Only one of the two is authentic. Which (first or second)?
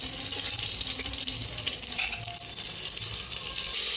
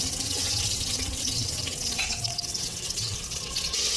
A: first